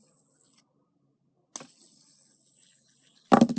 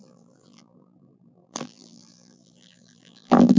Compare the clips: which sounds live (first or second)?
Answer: first